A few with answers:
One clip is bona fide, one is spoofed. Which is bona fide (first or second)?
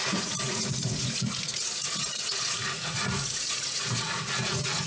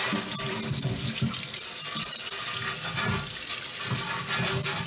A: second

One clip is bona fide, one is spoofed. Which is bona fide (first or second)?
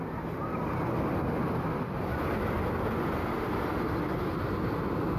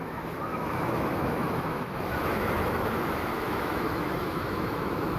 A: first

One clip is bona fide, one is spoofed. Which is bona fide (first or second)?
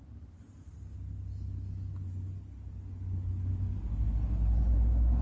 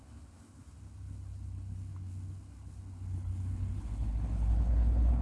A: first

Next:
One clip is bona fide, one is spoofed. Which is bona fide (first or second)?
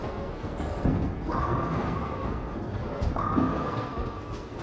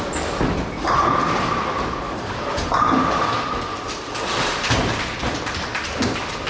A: second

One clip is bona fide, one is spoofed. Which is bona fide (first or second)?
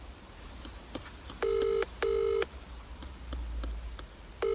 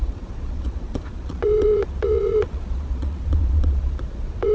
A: first